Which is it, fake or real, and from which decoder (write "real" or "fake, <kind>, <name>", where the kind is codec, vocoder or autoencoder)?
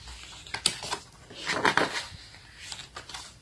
real